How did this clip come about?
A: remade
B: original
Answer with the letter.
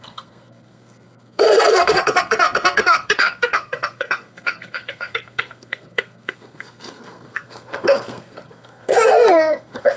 A